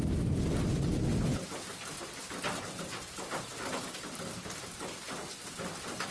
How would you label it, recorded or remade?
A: recorded